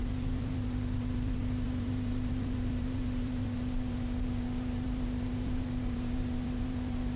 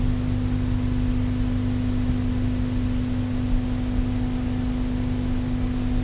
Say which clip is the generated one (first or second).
first